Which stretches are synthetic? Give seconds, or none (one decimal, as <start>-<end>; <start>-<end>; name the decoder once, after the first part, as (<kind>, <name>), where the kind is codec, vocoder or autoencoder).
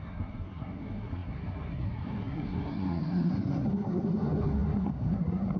0.0-5.6 (codec, SNAC)